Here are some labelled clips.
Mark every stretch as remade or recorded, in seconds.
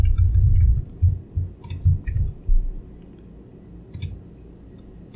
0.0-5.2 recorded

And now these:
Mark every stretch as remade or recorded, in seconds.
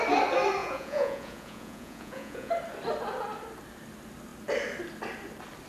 0.0-0.6 recorded; 0.6-2.5 remade; 2.5-5.7 recorded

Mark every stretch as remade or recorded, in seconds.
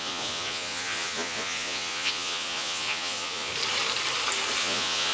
0.0-3.5 remade; 3.5-4.6 recorded; 4.6-5.1 remade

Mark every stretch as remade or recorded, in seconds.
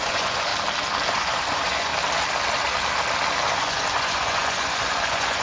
0.0-0.5 remade; 0.5-1.1 recorded; 1.1-1.9 remade; 1.9-3.6 recorded; 3.6-5.4 remade